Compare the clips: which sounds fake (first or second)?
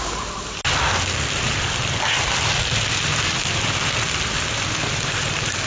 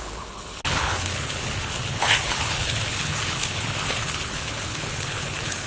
second